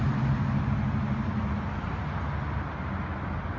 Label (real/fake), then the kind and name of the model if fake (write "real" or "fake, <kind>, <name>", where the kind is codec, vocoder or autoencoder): real